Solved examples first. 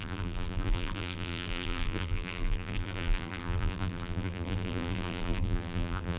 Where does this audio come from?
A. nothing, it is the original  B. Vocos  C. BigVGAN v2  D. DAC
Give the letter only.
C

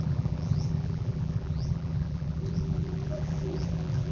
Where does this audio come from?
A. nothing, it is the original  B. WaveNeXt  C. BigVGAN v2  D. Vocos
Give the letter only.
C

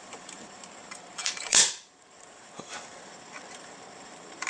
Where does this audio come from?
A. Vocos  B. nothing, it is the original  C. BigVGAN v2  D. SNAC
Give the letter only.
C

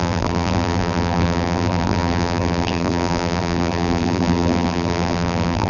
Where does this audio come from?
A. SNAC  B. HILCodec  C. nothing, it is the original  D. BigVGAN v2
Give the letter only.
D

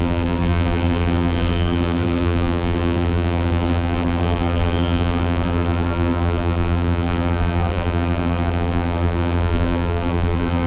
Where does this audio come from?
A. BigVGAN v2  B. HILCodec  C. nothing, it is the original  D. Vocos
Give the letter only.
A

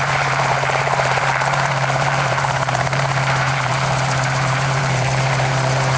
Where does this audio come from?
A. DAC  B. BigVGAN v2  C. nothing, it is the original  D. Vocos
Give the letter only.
B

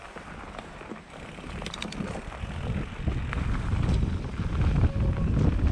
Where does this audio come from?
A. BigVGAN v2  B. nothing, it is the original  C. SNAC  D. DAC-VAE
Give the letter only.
B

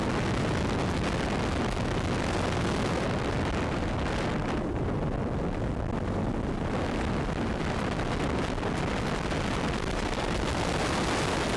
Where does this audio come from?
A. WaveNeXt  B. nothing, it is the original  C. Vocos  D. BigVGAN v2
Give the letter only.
B